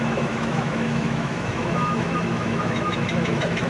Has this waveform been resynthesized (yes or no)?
yes